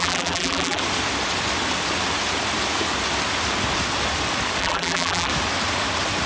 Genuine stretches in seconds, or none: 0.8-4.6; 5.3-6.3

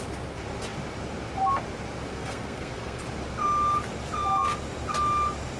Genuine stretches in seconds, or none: 0.0-2.1; 3.0-5.6

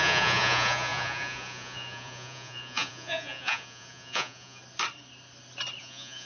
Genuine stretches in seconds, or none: 4.6-5.8

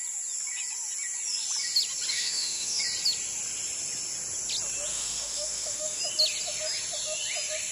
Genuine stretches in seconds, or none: 0.0-2.1; 2.8-4.9; 6.0-7.7

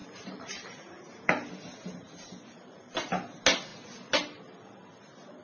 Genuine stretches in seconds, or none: 1.3-2.0; 3.1-5.4